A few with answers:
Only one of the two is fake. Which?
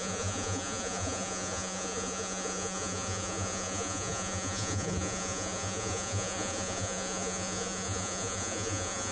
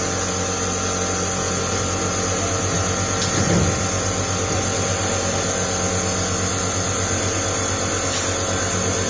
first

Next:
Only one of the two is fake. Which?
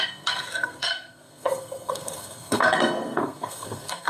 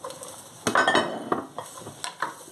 first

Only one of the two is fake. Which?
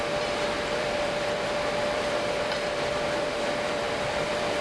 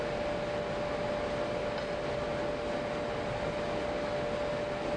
first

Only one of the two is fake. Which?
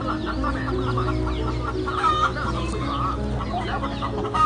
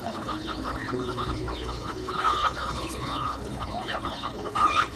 second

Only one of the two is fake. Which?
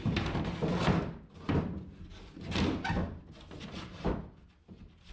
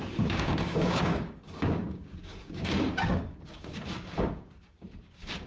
second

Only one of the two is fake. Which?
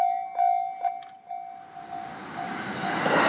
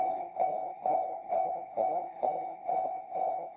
second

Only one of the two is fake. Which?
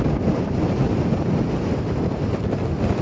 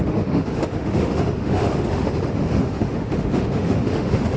second